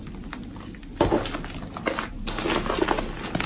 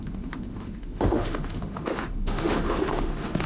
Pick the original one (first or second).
first